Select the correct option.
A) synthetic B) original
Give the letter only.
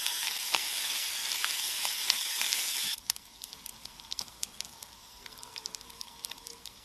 A